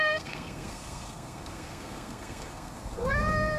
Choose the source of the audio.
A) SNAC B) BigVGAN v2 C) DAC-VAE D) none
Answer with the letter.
A